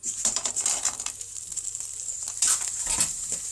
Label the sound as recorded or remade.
remade